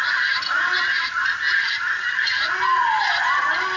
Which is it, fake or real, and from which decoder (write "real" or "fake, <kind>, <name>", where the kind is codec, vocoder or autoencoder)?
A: real